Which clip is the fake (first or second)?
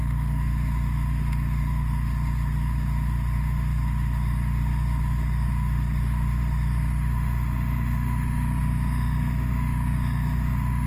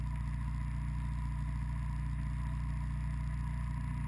first